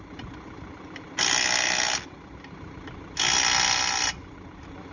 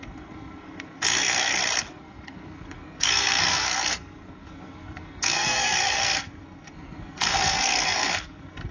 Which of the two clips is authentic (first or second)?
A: first